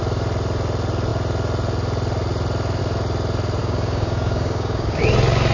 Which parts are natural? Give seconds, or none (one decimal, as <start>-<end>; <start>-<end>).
0.0-3.6; 5.0-5.5